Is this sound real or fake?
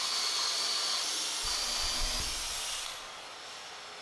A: real